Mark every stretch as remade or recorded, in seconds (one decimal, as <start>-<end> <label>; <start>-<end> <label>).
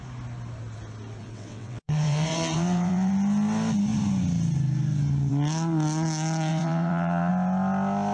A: 0.0-1.2 recorded; 1.2-3.1 remade; 3.1-6.5 recorded; 6.5-7.3 remade; 7.3-8.1 recorded